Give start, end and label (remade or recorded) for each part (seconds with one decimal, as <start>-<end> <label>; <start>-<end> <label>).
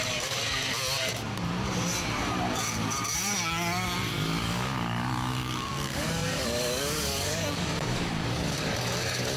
0.0-0.4 remade; 0.4-4.0 recorded; 4.0-9.4 remade